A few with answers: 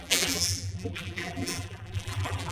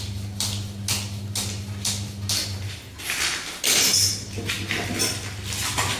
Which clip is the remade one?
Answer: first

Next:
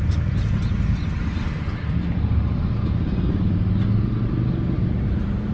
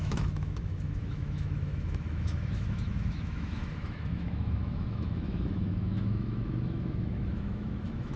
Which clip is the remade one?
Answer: second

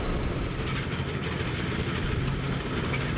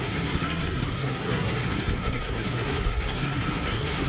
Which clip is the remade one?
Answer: second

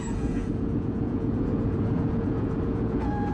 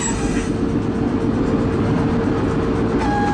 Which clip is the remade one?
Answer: first